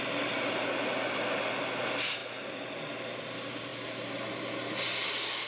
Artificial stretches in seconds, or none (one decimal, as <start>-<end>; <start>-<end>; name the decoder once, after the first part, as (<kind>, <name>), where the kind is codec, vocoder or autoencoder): none